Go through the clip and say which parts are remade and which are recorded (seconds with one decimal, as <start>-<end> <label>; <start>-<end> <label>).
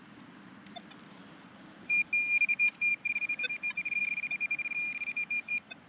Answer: 0.0-2.0 remade; 2.0-2.5 recorded; 2.5-5.9 remade